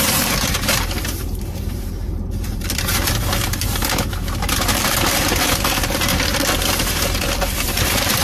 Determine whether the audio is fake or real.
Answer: fake